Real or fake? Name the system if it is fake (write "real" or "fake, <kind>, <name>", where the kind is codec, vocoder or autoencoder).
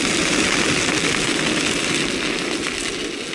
real